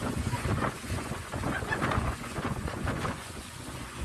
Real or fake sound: fake